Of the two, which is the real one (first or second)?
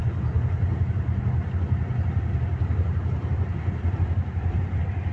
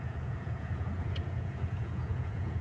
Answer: first